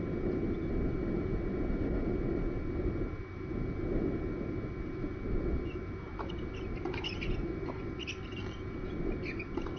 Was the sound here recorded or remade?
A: recorded